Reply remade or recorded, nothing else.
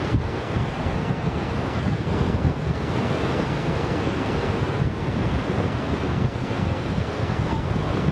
remade